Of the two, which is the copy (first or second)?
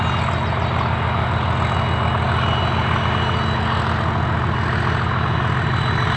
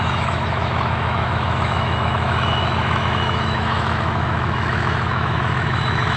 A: second